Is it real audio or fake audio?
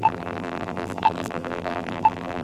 fake